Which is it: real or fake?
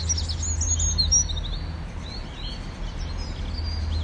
real